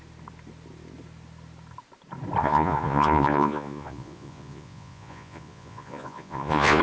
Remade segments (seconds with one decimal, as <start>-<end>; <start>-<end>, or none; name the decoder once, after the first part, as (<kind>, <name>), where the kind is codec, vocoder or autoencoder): 2.4-6.8 (vocoder, Vocos)

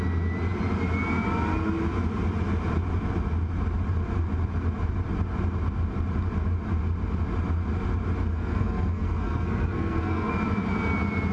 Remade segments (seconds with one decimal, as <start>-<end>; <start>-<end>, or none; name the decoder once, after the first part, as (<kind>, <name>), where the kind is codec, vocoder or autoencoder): 8.3-10.3 (codec, SNAC)